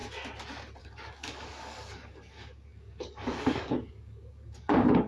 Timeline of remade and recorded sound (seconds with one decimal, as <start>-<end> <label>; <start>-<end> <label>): 0.0-0.8 recorded; 0.8-5.1 remade